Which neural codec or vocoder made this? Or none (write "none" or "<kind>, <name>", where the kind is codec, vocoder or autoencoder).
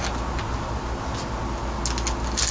none